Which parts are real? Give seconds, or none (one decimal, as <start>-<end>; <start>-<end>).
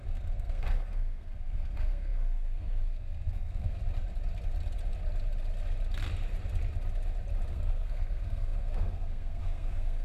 3.8-7.5